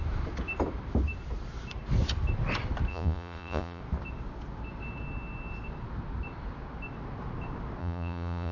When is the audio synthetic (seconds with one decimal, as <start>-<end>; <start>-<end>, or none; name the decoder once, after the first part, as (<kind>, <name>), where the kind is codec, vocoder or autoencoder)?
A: 2.9-3.8 (vocoder, Vocos); 7.8-8.5